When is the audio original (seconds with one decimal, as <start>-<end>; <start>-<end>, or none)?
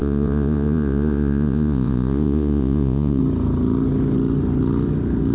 3.2-5.3